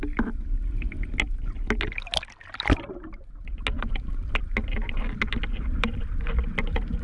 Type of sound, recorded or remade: recorded